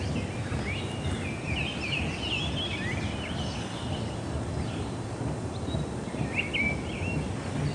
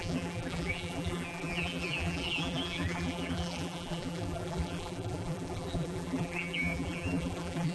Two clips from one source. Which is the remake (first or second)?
second